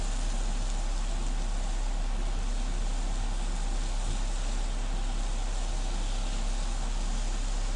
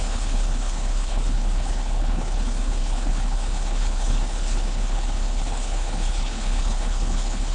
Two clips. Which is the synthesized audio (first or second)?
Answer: second